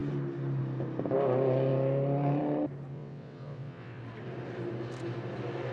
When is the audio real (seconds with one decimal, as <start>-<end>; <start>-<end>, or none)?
0.0-2.9; 4.0-5.7